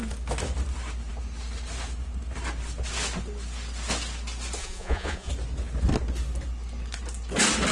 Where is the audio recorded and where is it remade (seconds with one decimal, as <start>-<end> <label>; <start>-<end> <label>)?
0.0-4.6 recorded; 4.6-5.3 remade; 5.3-7.7 recorded